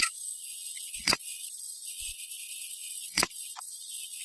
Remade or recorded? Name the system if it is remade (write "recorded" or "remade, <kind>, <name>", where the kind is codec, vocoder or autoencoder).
remade, vocoder, Vocos